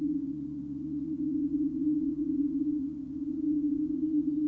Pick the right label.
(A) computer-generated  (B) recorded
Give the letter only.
A